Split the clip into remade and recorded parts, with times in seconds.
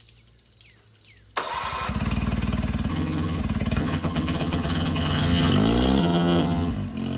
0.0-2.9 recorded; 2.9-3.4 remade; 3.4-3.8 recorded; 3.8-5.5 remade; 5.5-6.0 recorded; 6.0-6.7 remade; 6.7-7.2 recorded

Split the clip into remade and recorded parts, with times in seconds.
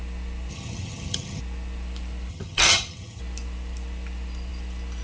0.0-0.5 recorded; 0.5-1.4 remade; 1.4-2.3 recorded; 2.3-3.2 remade; 3.2-5.0 recorded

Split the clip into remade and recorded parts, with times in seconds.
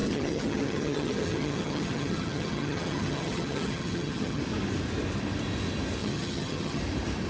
0.0-4.4 remade; 4.4-6.0 recorded; 6.0-6.8 remade; 6.8-7.3 recorded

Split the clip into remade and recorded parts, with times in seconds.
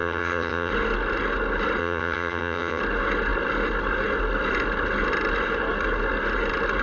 0.0-0.7 remade; 0.7-1.8 recorded; 1.8-2.8 remade; 2.8-6.8 recorded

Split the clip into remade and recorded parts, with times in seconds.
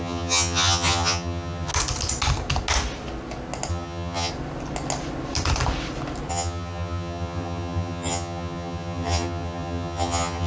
0.0-1.7 remade; 1.7-3.7 recorded; 3.7-4.3 remade; 4.3-6.3 recorded; 6.3-10.5 remade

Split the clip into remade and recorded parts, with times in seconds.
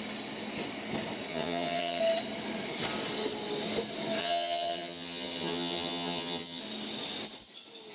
0.0-1.3 recorded; 1.3-2.0 remade; 2.0-4.2 recorded; 4.2-6.6 remade; 6.6-7.9 recorded